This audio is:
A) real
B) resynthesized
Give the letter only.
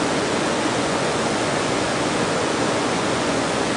B